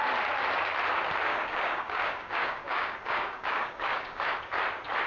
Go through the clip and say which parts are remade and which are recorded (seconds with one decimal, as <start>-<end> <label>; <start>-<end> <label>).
0.0-1.3 recorded; 1.3-4.4 remade; 4.4-5.1 recorded

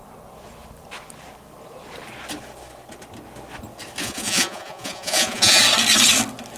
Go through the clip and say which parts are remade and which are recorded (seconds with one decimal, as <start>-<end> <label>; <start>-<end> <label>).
0.0-4.0 recorded; 4.0-5.6 remade; 5.6-6.6 recorded

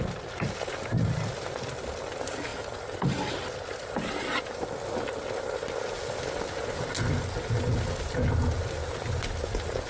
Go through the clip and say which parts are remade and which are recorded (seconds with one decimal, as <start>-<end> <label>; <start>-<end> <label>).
0.0-9.9 recorded

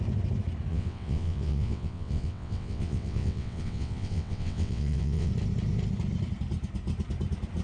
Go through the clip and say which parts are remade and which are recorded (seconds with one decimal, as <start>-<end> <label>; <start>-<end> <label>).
0.0-0.7 recorded; 0.7-5.3 remade; 5.3-7.6 recorded

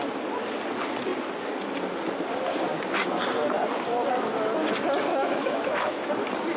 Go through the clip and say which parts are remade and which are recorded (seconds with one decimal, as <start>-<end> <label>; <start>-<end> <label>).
0.0-5.1 recorded; 5.1-6.1 remade; 6.1-6.6 recorded